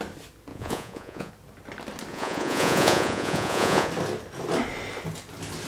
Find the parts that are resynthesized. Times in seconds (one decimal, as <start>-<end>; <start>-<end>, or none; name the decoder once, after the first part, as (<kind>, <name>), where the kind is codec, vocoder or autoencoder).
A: 0.5-1.3 (vocoder, Vocos); 2.1-3.9